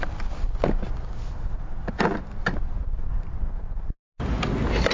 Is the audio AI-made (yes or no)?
no